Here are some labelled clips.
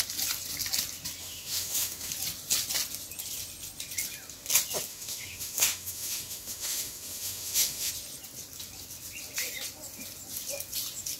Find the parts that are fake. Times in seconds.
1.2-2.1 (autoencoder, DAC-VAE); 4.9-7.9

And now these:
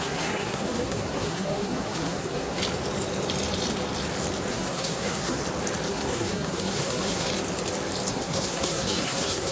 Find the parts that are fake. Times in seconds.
0.0-2.6 (codec, SNAC); 4.5-5.4; 5.9-7.3; 8.1-9.5

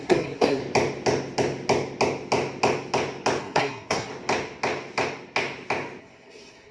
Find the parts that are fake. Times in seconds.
0.0-0.6 (codec, SNAC); 3.4-4.1; 6.0-6.7

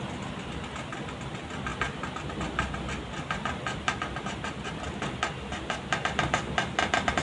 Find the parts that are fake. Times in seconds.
none

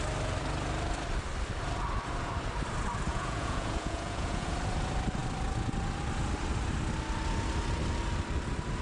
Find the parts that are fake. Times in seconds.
3.1-4.5 (vocoder, Vocos)

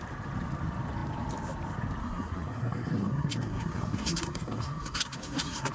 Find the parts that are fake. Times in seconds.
2.0-5.7 (codec, SNAC)